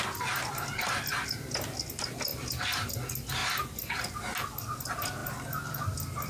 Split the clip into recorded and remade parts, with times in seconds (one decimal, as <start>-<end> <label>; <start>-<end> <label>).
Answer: 0.0-6.3 recorded

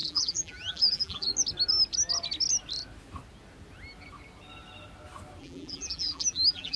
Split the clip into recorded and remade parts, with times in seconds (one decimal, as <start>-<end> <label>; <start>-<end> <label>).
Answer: 0.0-1.3 remade; 1.3-5.4 recorded; 5.4-6.8 remade

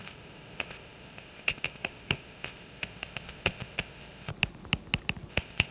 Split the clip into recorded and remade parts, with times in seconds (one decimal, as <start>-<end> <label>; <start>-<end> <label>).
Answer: 0.0-4.3 remade; 4.3-5.3 recorded; 5.3-5.7 remade

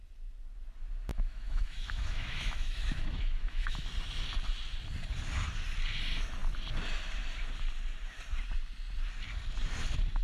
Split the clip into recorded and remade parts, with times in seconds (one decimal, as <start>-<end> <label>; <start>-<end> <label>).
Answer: 0.0-1.1 recorded; 1.1-3.9 remade; 3.9-10.2 recorded